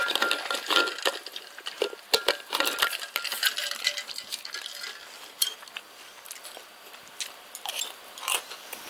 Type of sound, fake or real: real